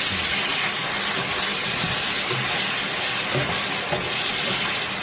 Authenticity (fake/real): real